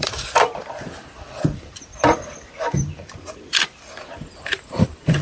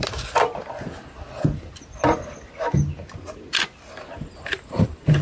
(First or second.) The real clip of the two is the second